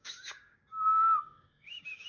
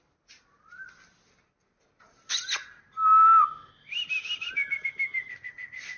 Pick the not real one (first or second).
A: first